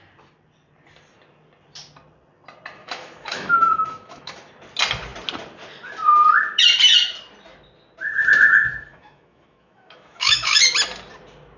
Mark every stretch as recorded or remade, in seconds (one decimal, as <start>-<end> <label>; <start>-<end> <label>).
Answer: 0.0-2.8 recorded; 2.8-4.5 remade; 4.5-8.9 recorded; 8.9-10.6 remade; 10.6-11.6 recorded